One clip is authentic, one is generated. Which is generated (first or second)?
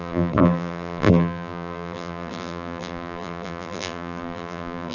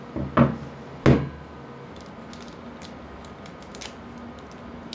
first